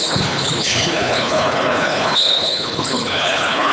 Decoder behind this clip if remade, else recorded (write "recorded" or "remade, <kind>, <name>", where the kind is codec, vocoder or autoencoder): remade, codec, HILCodec